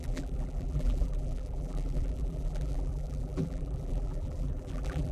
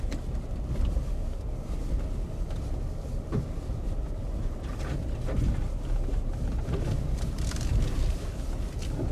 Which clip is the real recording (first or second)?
second